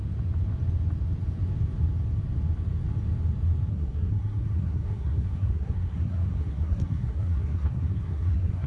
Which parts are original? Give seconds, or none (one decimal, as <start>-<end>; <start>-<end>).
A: 0.0-3.7